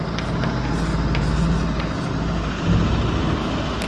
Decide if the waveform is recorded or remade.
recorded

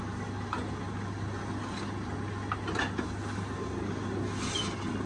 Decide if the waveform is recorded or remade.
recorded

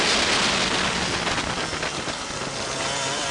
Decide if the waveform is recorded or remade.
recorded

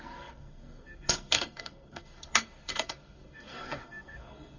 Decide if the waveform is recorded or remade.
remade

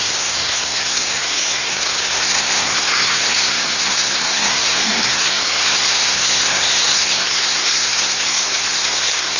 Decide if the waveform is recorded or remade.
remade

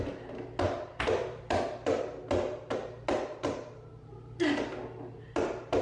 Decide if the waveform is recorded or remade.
recorded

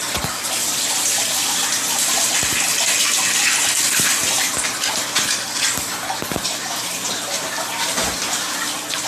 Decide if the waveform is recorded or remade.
recorded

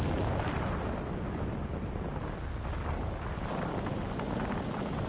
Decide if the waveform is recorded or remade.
recorded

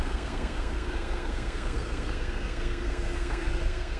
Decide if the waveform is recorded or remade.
remade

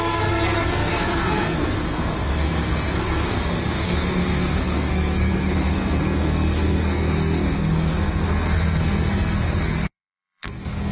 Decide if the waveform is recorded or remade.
remade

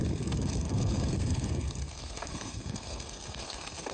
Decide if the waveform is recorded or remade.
remade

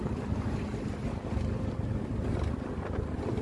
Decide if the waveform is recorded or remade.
recorded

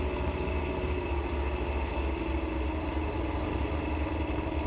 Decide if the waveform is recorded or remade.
recorded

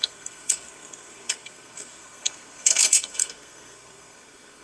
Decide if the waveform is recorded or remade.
remade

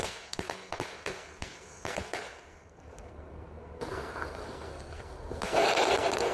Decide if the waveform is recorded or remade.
remade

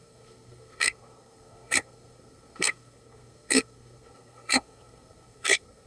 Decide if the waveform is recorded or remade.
remade